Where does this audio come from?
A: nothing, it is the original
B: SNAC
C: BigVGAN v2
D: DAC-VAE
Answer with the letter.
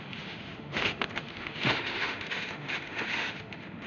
D